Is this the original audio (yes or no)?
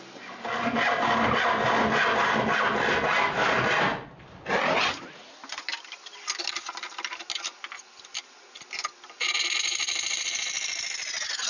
yes